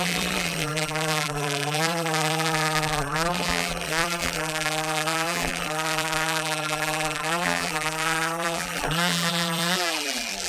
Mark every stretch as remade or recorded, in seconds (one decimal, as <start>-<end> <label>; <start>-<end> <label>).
0.0-10.5 remade